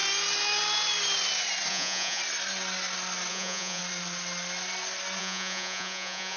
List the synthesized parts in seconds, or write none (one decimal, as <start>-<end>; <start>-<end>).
1.7-2.2; 3.3-3.8; 5.2-6.4